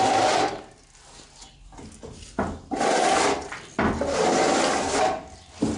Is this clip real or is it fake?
real